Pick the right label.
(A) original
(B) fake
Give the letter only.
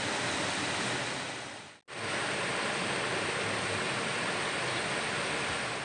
A